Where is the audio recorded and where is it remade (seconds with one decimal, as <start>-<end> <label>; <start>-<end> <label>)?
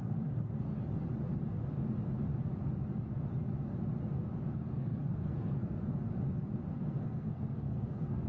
0.0-0.7 remade; 0.7-4.5 recorded; 4.5-6.1 remade; 6.1-6.7 recorded; 6.7-8.3 remade